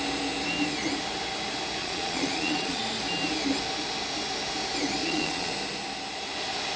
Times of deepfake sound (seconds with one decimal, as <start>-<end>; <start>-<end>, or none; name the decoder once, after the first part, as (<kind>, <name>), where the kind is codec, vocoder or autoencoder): 1.8-2.8 (vocoder, Vocos); 5.0-5.5